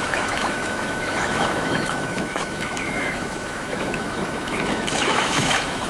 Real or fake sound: fake